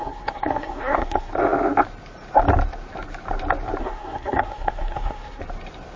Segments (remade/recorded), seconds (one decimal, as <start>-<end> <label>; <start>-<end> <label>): 0.0-1.3 remade; 1.3-3.8 recorded; 3.8-5.4 remade; 5.4-6.0 recorded